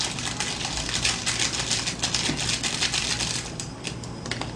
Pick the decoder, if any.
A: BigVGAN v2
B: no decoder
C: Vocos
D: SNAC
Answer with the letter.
B